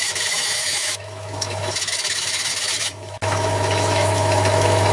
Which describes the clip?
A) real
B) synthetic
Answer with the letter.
B